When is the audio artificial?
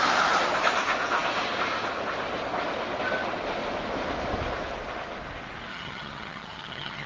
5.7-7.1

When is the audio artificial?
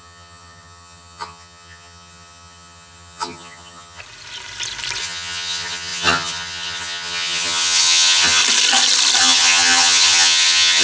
0.0-4.0; 5.0-8.4; 9.2-10.8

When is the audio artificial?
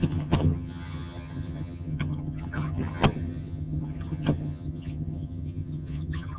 0.0-6.4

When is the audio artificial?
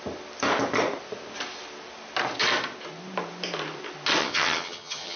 4.2-5.2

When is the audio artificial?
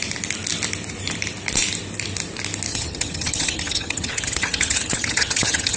2.7-5.8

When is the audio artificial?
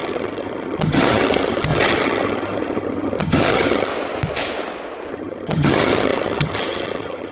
0.0-3.9; 5.1-7.3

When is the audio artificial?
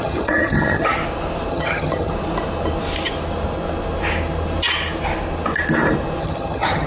0.0-1.0; 1.5-2.1; 6.2-6.9